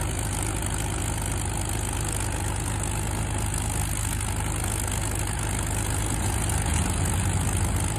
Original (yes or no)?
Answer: yes